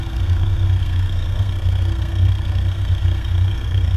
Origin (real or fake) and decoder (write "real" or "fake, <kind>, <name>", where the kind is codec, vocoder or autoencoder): fake, codec, SNAC